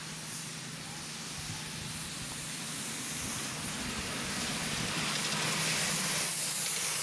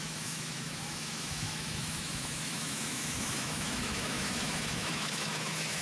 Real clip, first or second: first